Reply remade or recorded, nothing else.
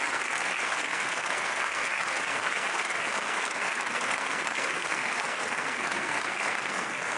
remade